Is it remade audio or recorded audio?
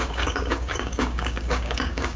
remade